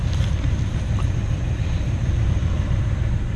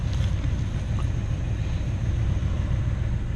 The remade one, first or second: first